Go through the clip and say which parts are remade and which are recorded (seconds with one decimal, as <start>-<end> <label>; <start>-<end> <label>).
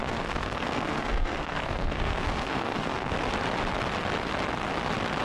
0.0-3.1 remade; 3.1-5.2 recorded